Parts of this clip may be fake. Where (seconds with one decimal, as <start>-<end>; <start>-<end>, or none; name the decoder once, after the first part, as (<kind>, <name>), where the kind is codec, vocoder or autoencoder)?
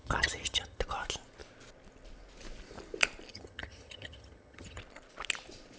0.0-0.8 (vocoder, HiFi-GAN); 3.3-4.8